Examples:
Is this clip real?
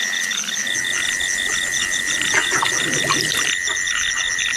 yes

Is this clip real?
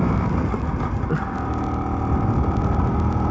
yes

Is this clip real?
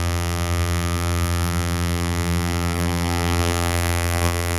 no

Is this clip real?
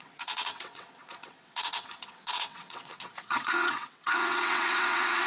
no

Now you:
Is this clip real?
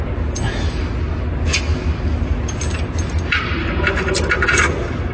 yes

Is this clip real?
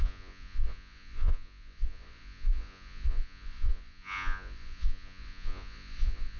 no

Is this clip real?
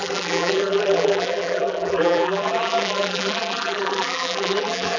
no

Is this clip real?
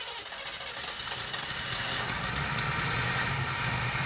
yes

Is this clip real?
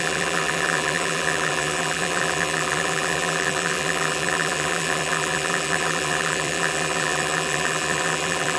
no